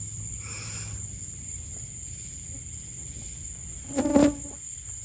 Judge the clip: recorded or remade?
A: recorded